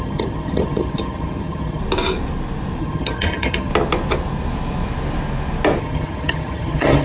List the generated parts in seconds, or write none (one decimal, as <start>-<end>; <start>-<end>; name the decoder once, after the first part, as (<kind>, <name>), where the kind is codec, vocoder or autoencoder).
0.0-1.8 (vocoder, HiFi-GAN); 2.8-3.7; 5.8-7.0